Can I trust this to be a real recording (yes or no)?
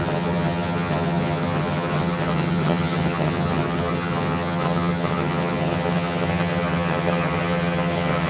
no